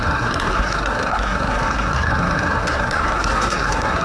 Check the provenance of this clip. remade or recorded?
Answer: remade